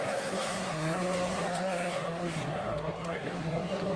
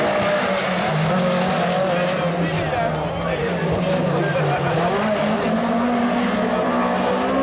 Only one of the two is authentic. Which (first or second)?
second